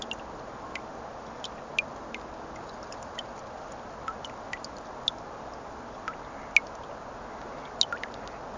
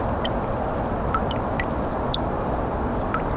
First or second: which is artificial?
second